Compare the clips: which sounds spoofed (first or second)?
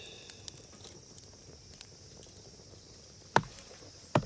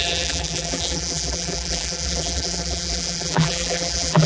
second